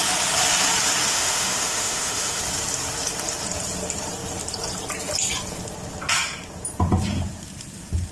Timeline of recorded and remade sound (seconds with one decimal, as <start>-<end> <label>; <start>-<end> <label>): 0.0-1.1 recorded; 1.1-2.4 remade; 2.4-8.1 recorded